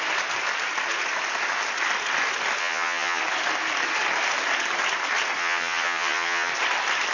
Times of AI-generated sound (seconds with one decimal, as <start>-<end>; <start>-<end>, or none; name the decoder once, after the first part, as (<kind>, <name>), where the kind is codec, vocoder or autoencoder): 2.6-3.2 (vocoder, HiFi-GAN); 5.4-6.5